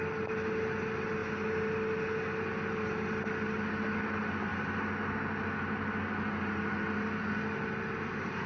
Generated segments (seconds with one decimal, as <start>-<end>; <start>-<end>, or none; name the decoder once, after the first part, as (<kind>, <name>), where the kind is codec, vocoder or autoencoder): none